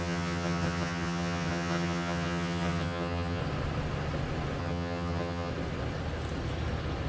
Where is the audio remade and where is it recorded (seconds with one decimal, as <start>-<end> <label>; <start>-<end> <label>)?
0.0-3.4 remade; 3.4-4.6 recorded; 4.6-5.5 remade; 5.5-7.1 recorded